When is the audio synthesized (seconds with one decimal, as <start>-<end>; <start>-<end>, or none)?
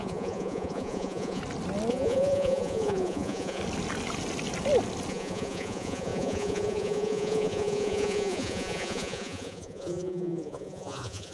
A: 0.0-1.4; 1.9-3.6; 5.1-11.3